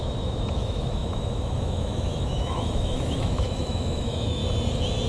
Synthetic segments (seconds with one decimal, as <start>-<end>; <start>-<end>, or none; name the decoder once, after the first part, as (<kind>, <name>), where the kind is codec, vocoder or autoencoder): 0.0-4.4 (autoencoder, DAC-VAE)

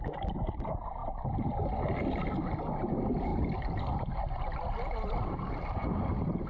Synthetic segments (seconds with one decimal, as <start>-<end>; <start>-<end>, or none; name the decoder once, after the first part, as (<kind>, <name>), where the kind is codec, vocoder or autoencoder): none

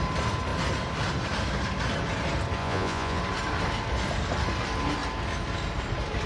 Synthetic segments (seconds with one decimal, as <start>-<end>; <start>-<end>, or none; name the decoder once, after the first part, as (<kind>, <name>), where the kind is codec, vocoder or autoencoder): 2.6-3.2 (vocoder, Vocos)

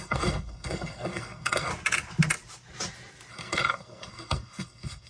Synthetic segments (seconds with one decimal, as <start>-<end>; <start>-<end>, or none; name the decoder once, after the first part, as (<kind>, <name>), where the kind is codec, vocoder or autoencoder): 0.0-1.7 (codec, SNAC); 3.3-5.1

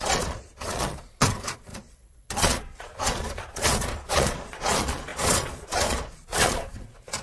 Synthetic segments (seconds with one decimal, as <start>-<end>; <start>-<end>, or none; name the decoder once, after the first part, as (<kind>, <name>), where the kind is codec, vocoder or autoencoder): 0.0-7.2 (vocoder, Vocos)